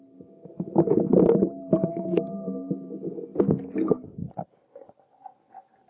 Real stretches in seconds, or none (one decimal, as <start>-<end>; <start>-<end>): 0.0-1.8; 2.7-5.9